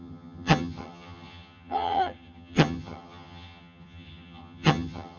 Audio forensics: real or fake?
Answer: fake